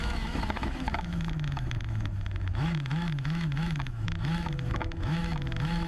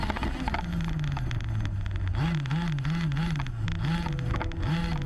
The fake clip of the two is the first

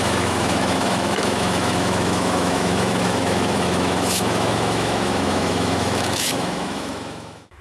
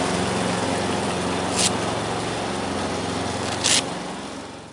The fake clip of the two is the first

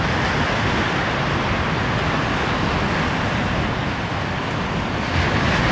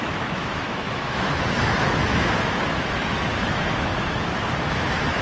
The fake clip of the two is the second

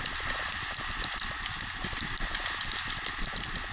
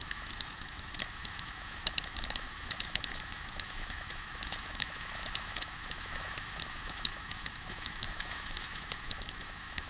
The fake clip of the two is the second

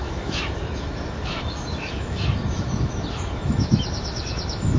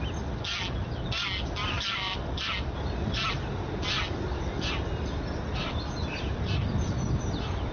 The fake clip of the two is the first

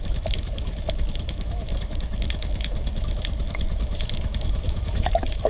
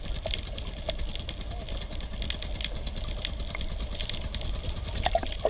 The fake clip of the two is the first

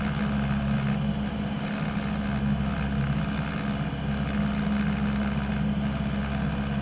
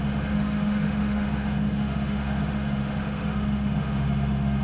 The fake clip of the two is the second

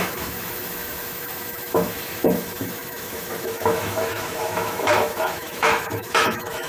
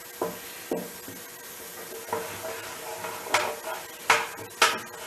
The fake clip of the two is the first